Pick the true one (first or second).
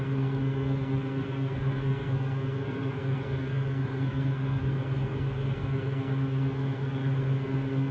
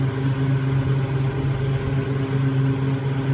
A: second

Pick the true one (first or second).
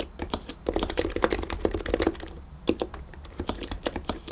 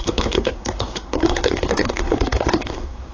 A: first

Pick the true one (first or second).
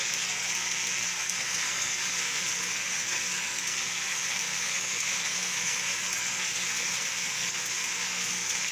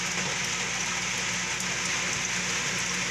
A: second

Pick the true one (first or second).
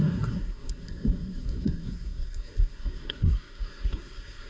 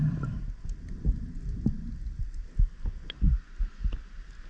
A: second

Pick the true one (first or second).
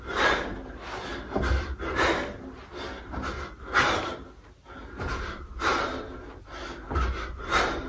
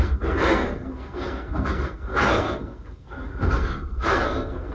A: first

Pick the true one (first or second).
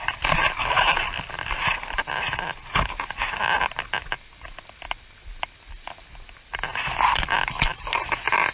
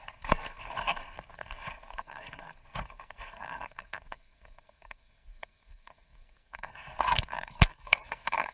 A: first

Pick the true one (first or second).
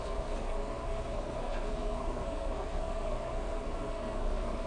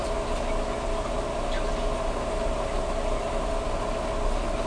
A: second